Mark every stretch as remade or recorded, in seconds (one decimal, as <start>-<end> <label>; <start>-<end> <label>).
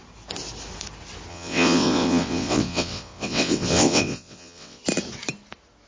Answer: 0.0-1.3 recorded; 1.3-4.8 remade; 4.8-5.9 recorded